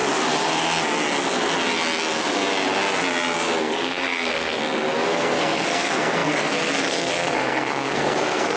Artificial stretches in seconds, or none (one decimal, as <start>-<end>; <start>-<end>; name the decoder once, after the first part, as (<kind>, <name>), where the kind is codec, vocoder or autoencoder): 3.6-4.6 (codec, SNAC); 5.1-8.6